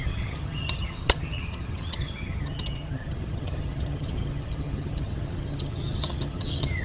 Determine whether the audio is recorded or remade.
remade